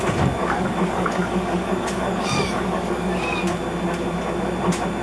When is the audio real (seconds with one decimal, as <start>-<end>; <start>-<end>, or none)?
0.0-0.4; 3.4-5.0